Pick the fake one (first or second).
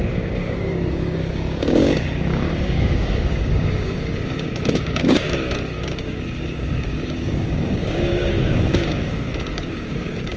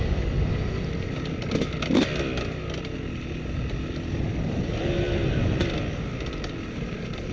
first